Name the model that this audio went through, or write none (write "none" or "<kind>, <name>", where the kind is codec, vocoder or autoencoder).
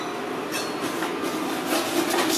none